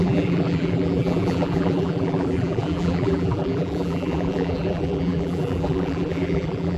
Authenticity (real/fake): fake